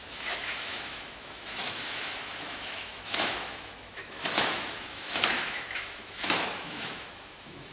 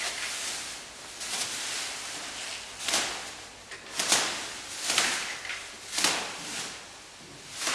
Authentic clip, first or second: second